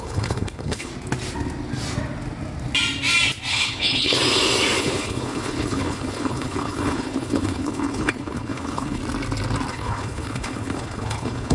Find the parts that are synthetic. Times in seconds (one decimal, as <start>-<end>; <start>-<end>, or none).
0.0-0.9; 3.5-4.2; 4.8-9.0; 9.7-11.5